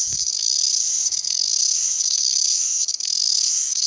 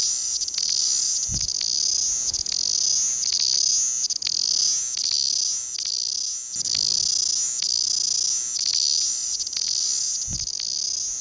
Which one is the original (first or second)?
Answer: second